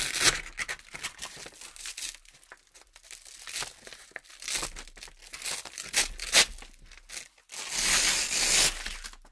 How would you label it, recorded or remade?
recorded